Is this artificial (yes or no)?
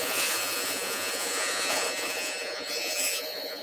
yes